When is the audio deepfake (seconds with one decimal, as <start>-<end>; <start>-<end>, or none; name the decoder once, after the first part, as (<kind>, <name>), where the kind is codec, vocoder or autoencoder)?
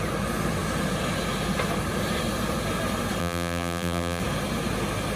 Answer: 3.2-4.2 (vocoder, BigVGAN v2)